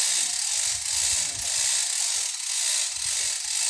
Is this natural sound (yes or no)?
yes